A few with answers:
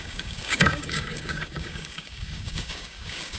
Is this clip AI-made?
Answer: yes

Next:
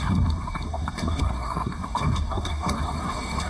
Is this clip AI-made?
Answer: yes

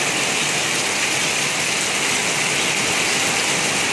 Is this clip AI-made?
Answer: no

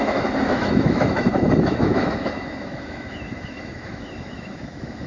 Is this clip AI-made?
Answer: yes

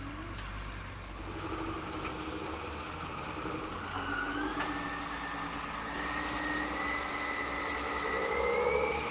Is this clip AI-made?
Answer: no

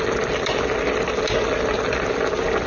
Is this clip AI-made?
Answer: no